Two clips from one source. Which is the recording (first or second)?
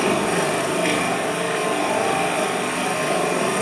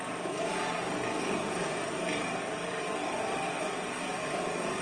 first